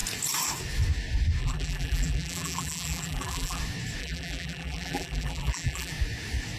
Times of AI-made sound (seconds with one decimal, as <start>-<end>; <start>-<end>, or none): 1.4-3.6; 4.0-5.9